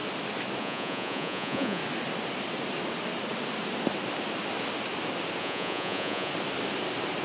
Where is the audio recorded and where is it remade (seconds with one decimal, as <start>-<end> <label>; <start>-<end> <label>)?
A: 0.0-0.6 recorded; 0.6-1.8 remade; 1.8-5.4 recorded; 5.4-6.3 remade; 6.3-7.2 recorded